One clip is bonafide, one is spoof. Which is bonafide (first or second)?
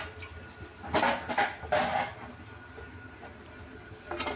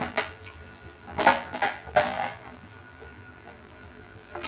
first